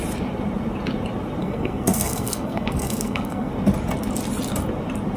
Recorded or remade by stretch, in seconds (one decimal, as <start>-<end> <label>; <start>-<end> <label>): 0.0-1.4 recorded; 1.4-3.5 remade; 3.5-5.2 recorded